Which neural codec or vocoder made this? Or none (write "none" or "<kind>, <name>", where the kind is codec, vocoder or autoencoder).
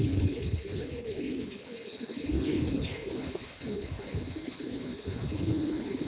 codec, HILCodec